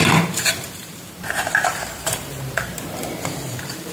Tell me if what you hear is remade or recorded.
remade